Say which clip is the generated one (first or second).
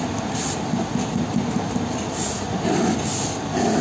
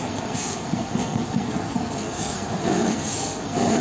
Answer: second